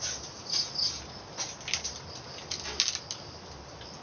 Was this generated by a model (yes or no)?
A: no